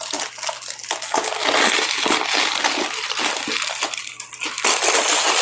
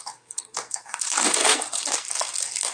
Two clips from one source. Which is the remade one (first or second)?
second